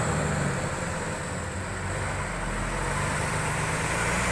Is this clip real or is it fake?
real